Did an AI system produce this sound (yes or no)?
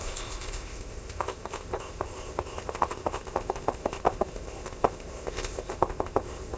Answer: yes